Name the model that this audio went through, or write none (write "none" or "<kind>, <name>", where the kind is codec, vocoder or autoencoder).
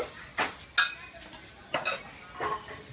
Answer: none